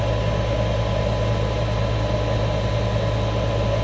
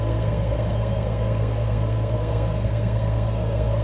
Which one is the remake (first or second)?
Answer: second